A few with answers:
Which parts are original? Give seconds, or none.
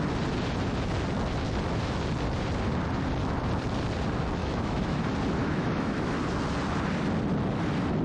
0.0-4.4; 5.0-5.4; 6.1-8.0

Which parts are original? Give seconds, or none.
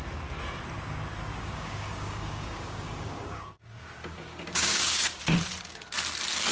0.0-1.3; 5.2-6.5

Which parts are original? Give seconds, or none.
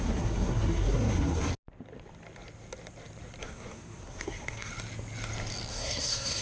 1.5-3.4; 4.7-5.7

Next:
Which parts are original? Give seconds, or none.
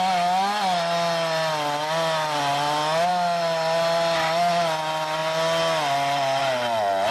0.0-7.1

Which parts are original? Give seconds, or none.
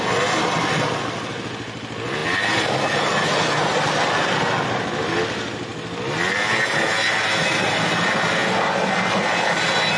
0.0-10.0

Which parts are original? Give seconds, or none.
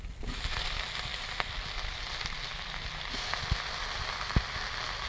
0.0-5.1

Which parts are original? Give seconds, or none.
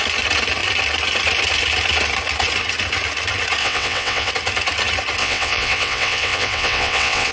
0.0-3.6; 4.3-5.2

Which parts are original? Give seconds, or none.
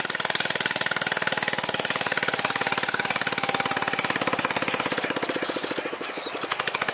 0.0-6.9